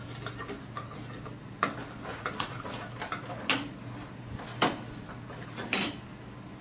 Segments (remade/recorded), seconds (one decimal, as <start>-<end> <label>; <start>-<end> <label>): 0.0-2.1 recorded; 2.1-2.8 remade; 2.8-6.6 recorded